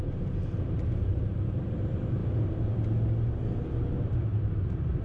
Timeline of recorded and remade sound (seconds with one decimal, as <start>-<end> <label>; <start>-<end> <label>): 0.0-2.2 remade; 2.2-4.0 recorded; 4.0-5.0 remade